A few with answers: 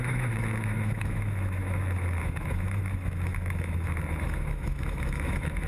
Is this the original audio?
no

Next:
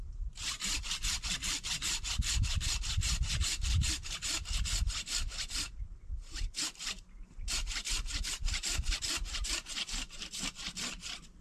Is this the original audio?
no